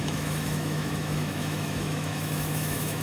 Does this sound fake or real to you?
fake